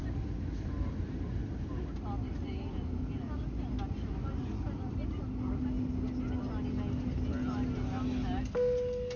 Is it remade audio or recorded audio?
recorded